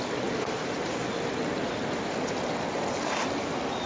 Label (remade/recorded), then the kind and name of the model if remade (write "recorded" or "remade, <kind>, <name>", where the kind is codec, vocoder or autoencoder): recorded